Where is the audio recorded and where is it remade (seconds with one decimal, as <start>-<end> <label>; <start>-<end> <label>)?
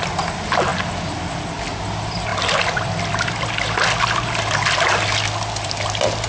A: 0.0-6.3 recorded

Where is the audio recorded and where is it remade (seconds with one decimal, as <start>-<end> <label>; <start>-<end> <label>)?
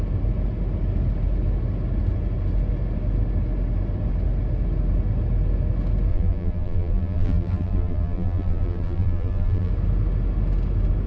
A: 0.0-6.1 recorded; 6.1-9.7 remade; 9.7-11.1 recorded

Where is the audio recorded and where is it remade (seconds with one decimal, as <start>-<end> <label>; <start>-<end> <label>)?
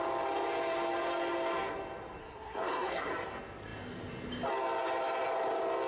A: 0.0-2.2 recorded; 2.2-3.1 remade; 3.1-5.9 recorded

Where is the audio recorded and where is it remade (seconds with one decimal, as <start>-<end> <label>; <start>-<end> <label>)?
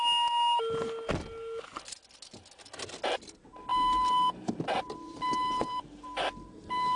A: 0.0-3.7 recorded; 3.7-7.0 remade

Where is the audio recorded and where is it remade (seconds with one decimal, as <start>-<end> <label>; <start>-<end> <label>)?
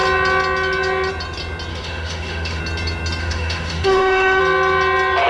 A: 0.0-1.7 recorded; 1.7-2.6 remade; 2.6-3.2 recorded; 3.2-4.4 remade; 4.4-5.3 recorded